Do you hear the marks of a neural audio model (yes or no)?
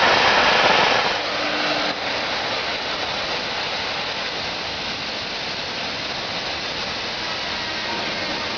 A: no